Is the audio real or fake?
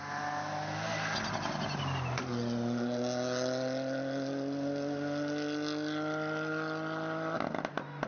real